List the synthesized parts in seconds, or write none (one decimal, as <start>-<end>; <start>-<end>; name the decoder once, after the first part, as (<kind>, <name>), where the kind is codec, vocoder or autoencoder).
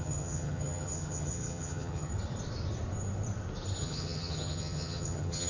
0.0-2.1 (vocoder, HiFi-GAN); 3.8-5.5